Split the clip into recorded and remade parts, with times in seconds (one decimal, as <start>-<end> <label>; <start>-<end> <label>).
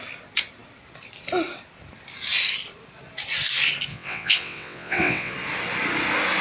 0.0-3.9 recorded; 3.9-5.3 remade; 5.3-6.4 recorded